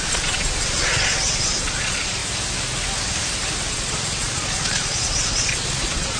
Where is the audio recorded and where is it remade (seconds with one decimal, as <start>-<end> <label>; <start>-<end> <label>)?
0.0-2.2 remade; 2.2-3.7 recorded; 3.7-6.2 remade